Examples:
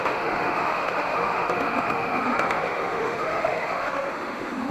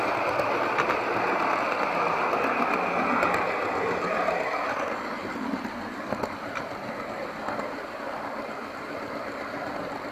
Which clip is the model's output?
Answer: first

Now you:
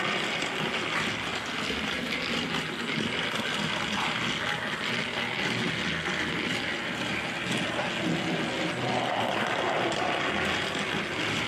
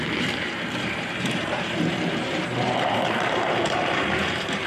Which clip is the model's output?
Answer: second